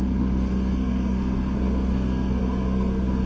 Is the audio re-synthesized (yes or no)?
yes